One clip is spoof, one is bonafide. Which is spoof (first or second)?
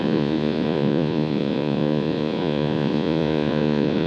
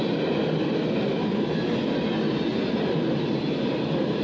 first